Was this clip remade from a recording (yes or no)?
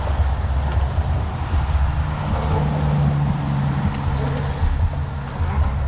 no